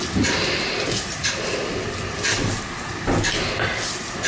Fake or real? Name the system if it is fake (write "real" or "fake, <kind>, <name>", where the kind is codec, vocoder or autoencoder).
real